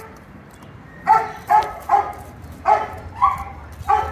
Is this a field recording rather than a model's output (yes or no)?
no